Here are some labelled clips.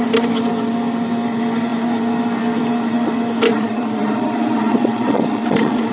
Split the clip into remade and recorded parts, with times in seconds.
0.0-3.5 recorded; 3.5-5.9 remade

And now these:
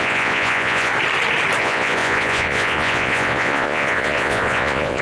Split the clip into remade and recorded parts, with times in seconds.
0.0-0.9 remade; 0.9-1.6 recorded; 1.6-5.0 remade

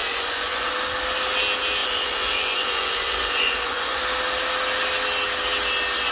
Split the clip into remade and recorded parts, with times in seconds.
0.0-0.7 remade; 0.7-1.8 recorded; 1.8-4.0 remade; 4.0-6.1 recorded

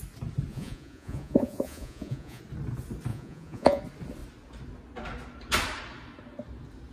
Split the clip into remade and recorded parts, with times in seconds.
0.0-0.5 recorded; 0.5-2.4 remade; 2.4-3.1 recorded; 3.1-3.8 remade; 3.8-6.9 recorded

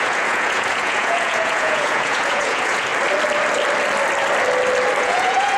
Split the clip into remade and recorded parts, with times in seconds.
0.0-2.9 remade; 2.9-5.0 recorded; 5.0-5.6 remade

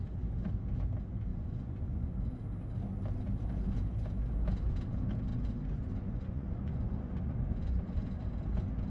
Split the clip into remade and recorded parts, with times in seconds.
0.0-1.3 recorded; 1.3-2.3 remade; 2.3-5.3 recorded; 5.3-8.2 remade; 8.2-8.9 recorded

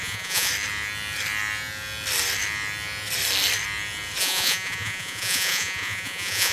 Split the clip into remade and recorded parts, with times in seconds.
0.0-0.5 remade; 0.5-4.2 recorded; 4.2-6.5 remade